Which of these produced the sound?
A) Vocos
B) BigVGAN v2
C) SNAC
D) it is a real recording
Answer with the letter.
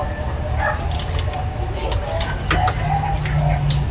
D